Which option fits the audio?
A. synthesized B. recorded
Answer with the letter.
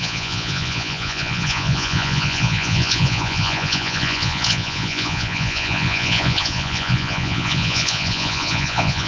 A